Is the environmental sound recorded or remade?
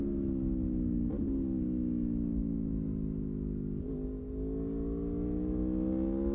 recorded